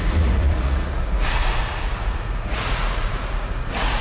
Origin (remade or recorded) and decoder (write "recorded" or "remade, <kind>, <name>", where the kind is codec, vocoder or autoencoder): remade, vocoder, Vocos